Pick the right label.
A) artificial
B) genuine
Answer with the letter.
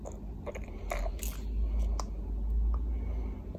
B